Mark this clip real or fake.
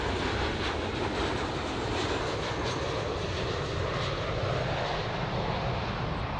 real